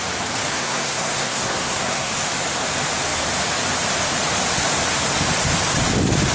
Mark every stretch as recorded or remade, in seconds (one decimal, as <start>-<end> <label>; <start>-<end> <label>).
0.0-0.5 recorded; 0.5-2.1 remade; 2.1-6.3 recorded